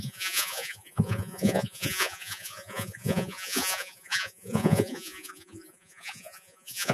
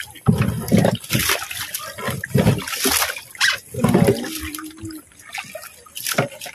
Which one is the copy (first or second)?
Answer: first